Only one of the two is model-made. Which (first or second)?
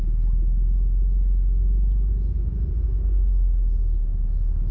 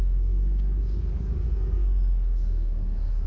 second